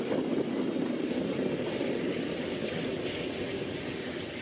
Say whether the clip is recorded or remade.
recorded